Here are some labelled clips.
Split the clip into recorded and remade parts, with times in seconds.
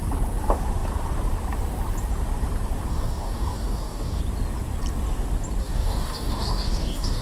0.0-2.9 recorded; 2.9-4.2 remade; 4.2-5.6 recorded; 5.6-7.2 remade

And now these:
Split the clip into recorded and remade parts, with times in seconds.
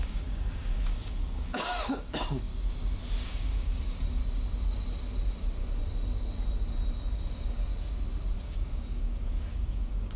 0.0-2.5 remade; 2.5-3.2 recorded; 3.2-4.2 remade; 4.2-7.3 recorded; 7.3-7.7 remade; 7.7-8.4 recorded; 8.4-10.2 remade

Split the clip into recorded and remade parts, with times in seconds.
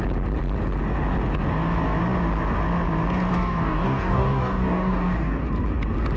0.0-3.3 recorded; 3.3-5.5 remade; 5.5-6.2 recorded